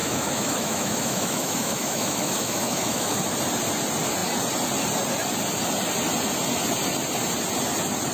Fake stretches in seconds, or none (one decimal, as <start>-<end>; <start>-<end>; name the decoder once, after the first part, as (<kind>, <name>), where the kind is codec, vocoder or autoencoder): 0.0-3.2 (autoencoder, DAC-VAE)